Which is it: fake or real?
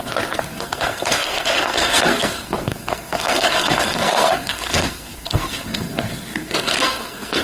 fake